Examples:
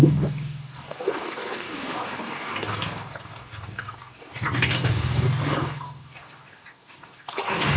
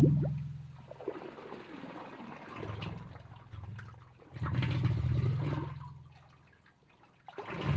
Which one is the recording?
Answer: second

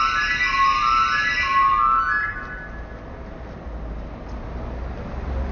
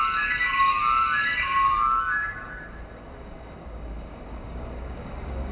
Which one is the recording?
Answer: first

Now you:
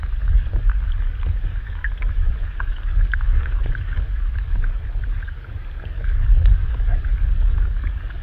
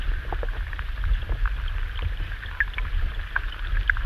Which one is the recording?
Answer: second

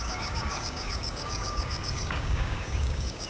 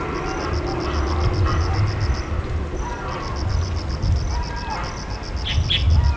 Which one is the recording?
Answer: second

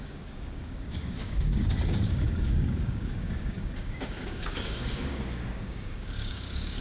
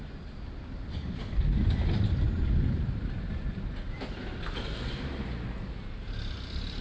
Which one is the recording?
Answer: second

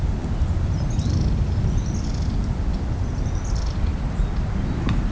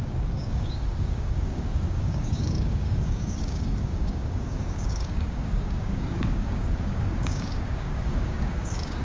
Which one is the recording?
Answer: first